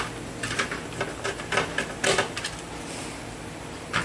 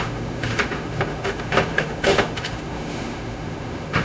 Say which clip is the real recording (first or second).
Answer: first